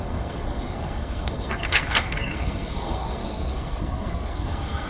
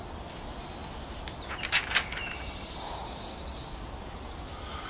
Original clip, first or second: second